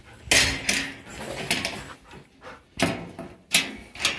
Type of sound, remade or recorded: recorded